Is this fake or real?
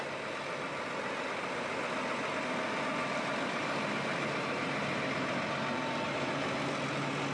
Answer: real